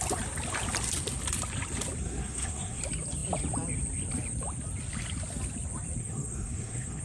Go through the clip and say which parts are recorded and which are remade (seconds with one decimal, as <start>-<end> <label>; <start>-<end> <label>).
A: 0.0-2.0 recorded; 2.0-2.8 remade; 2.8-6.0 recorded; 6.0-7.0 remade